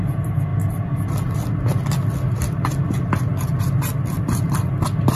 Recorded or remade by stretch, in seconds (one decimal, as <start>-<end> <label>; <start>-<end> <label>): 0.0-5.1 recorded